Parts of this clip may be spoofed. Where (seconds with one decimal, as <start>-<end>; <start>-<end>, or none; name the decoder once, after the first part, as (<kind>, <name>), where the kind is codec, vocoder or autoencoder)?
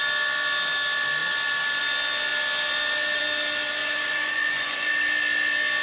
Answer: 3.8-4.9 (vocoder, Vocos)